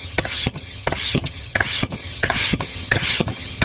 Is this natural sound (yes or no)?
no